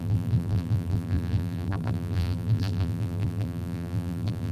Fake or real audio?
fake